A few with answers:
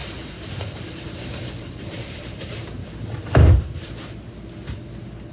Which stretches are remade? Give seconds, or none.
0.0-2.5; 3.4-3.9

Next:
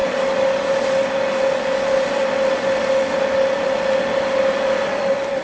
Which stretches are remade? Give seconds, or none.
none

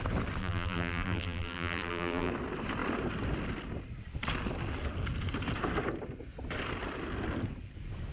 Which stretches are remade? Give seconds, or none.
0.4-2.3